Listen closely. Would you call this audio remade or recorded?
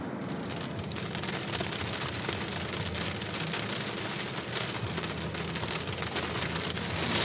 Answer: recorded